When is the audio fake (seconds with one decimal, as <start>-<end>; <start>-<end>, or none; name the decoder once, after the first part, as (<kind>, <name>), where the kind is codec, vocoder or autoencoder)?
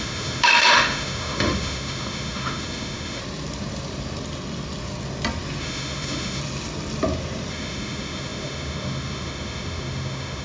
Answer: 0.0-3.2 (autoencoder, DAC-VAE); 5.6-6.4; 7.5-10.4